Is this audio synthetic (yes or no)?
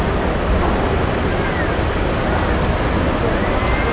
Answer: no